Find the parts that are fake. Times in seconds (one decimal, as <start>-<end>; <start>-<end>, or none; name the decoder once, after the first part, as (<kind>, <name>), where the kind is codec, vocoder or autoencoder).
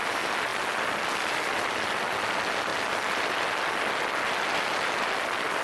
none